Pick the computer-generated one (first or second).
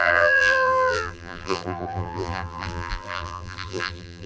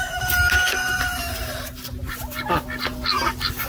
first